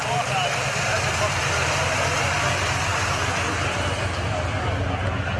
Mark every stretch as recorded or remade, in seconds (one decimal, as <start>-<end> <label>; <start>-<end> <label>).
0.0-5.4 recorded